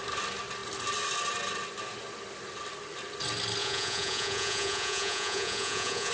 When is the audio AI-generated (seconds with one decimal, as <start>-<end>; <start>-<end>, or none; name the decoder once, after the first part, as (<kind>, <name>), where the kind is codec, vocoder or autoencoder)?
3.6-6.1 (vocoder, Vocos)